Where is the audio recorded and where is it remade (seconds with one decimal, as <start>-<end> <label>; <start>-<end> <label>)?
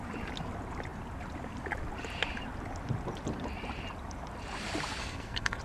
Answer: 0.0-5.0 recorded; 5.0-5.6 remade